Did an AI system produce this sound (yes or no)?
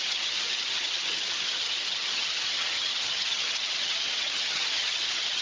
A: yes